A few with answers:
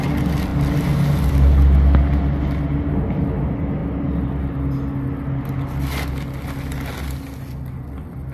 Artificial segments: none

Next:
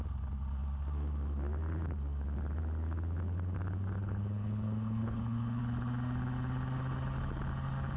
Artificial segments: 4.0-5.6 (codec, HILCodec)

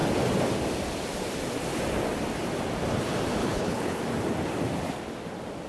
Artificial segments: 3.4-4.0 (codec, HILCodec)